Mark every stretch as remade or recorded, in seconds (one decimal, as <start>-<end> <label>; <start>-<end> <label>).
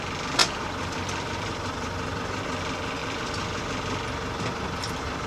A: 0.0-0.4 recorded; 0.4-2.4 remade; 2.4-3.0 recorded; 3.0-3.6 remade; 3.6-5.3 recorded